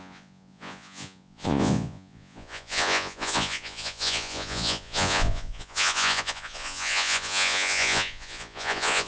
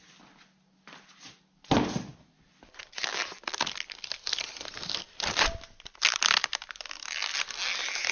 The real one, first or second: second